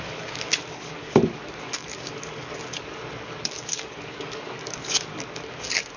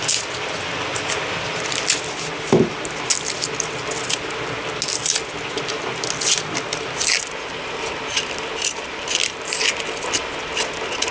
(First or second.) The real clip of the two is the second